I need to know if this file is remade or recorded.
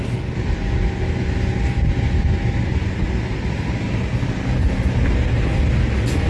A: recorded